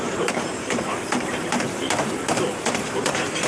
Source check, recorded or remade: remade